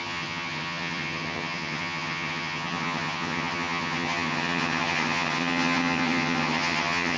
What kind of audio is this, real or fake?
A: fake